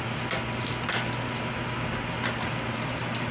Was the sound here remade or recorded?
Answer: recorded